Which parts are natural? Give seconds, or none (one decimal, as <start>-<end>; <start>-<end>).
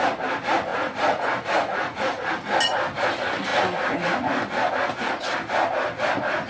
0.0-0.7; 2.1-6.5